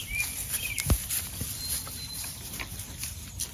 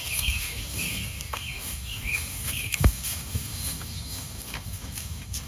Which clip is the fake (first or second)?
second